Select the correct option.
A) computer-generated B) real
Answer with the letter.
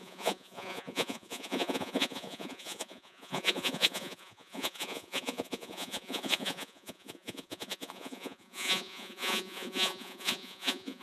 A